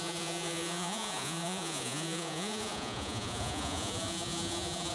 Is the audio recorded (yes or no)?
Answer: no